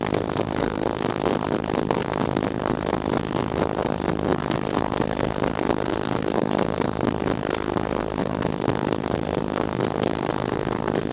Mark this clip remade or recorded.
remade